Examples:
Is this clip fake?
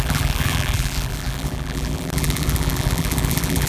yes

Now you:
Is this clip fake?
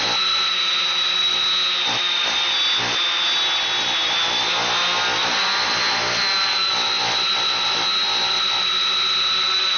no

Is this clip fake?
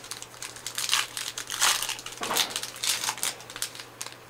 no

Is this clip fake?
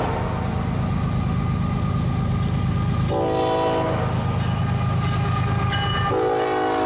no